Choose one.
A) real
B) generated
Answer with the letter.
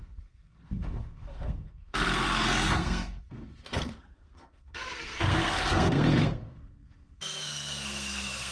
B